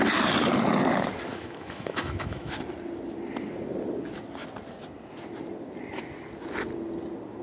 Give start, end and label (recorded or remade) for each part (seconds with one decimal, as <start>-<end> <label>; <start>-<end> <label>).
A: 0.0-1.3 recorded; 1.3-2.5 remade; 2.5-7.4 recorded